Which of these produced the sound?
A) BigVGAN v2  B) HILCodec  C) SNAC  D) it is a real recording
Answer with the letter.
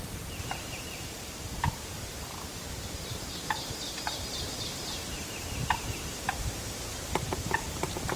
A